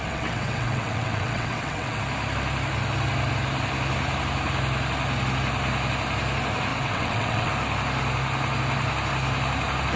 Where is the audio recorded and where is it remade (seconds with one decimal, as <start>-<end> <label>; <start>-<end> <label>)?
0.0-2.0 remade; 2.0-6.7 recorded; 6.7-7.5 remade; 7.5-10.0 recorded